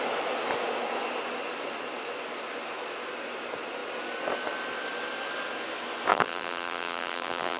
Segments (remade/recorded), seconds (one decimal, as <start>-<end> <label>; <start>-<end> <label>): 0.0-6.1 recorded; 6.1-7.6 remade